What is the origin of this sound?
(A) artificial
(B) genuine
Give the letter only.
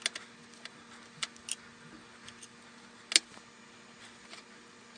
B